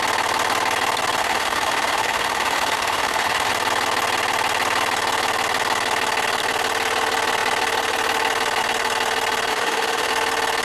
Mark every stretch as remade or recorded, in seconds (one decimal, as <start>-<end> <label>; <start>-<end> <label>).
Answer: 0.0-1.2 recorded; 1.2-3.5 remade; 3.5-9.5 recorded; 9.5-10.1 remade; 10.1-10.6 recorded